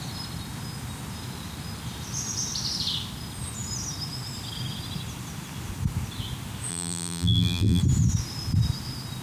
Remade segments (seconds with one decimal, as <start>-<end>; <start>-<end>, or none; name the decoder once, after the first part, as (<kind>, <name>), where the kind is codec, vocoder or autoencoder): 6.7-7.8 (vocoder, BigVGAN v2)